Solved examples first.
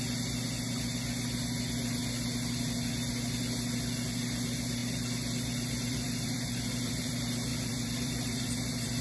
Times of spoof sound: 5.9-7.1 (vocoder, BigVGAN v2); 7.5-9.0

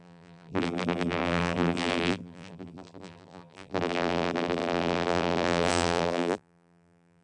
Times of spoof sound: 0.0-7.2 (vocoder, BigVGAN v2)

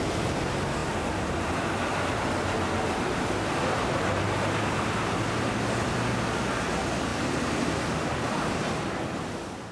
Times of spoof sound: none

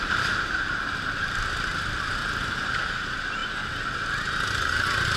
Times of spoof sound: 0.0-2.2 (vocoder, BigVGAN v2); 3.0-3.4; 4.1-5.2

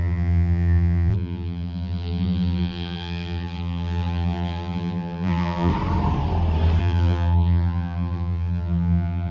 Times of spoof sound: 0.0-5.7 (vocoder, BigVGAN v2); 6.8-9.3